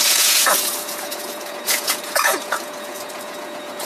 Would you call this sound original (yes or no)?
no